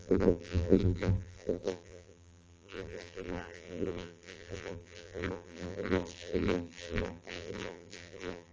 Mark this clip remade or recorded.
remade